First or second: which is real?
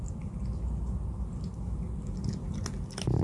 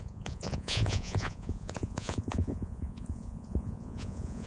first